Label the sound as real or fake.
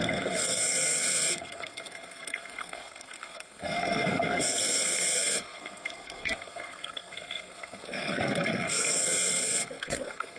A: fake